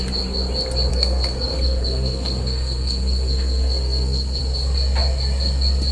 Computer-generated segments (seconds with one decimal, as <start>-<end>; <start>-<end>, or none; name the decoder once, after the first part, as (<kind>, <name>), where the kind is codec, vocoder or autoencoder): 0.9-4.4 (codec, SNAC)

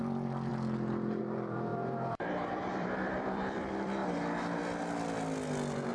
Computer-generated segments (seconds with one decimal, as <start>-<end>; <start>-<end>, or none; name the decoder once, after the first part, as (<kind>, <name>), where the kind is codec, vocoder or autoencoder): 0.0-0.5 (vocoder, BigVGAN v2); 1.2-4.0

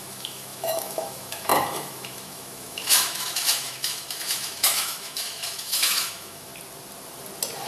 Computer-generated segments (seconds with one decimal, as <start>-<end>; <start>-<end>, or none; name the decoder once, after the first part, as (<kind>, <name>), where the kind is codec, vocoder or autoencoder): 0.0-6.5 (autoencoder, DAC-VAE)